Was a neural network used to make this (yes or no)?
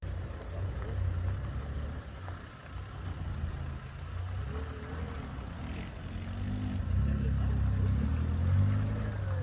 no